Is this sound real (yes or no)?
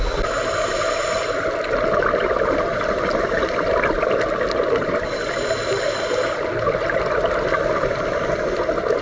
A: yes